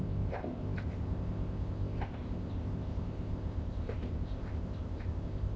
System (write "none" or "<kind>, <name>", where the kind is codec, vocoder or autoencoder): codec, ZipCodec